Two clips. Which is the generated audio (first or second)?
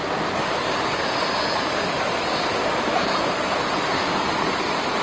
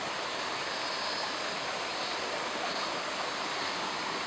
second